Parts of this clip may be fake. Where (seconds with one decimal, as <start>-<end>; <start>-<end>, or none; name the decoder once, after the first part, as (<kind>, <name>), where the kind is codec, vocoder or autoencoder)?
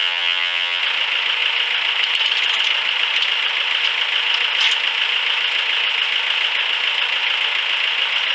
0.0-0.8 (vocoder, HiFi-GAN)